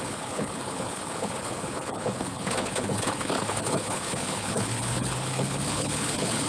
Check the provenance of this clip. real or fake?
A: fake